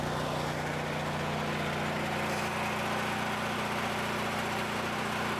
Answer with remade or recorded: recorded